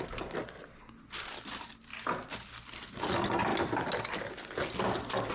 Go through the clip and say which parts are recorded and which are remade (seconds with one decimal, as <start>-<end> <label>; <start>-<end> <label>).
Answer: 0.0-5.3 recorded